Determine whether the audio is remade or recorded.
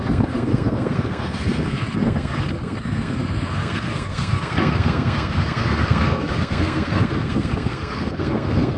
remade